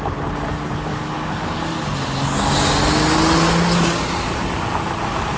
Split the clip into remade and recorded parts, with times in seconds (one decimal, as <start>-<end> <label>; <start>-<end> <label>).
0.0-0.9 recorded; 0.9-1.6 remade; 1.6-5.4 recorded